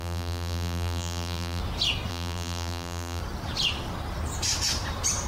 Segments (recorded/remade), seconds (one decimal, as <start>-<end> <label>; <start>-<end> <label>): 0.0-1.6 remade; 1.6-2.1 recorded; 2.1-3.2 remade; 3.2-5.3 recorded